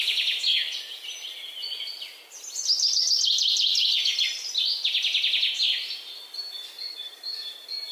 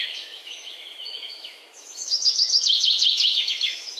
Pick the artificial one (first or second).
second